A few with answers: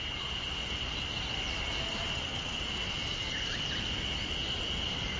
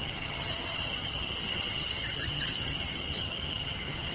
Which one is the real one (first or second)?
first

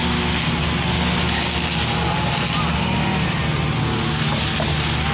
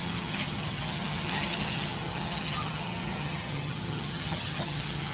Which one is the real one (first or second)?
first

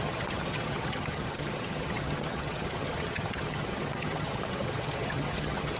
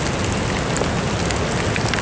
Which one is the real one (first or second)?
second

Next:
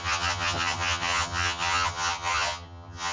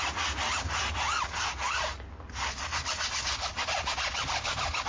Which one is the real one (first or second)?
second